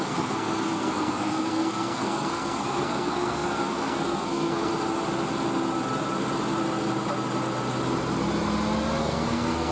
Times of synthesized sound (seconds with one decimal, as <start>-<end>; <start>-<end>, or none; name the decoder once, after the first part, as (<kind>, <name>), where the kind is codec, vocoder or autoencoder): 0.0-4.7 (codec, SNAC); 9.0-9.7